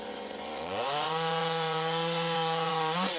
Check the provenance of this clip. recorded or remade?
remade